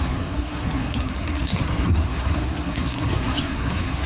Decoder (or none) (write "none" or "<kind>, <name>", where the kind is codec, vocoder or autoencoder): codec, SNAC